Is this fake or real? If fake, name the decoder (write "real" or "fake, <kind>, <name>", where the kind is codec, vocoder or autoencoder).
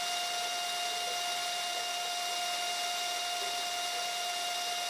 real